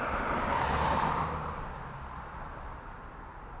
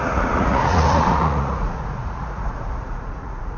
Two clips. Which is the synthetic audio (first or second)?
second